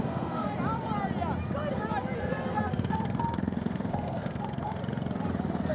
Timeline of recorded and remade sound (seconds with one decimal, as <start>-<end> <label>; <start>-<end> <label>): 0.0-0.5 remade; 0.5-2.2 recorded; 2.2-4.8 remade; 4.8-5.7 recorded